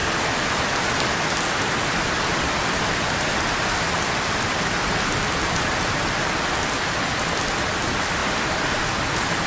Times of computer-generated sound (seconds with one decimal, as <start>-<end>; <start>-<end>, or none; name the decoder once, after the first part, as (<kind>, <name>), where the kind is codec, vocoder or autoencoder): 2.3-4.7 (vocoder, BigVGAN v2)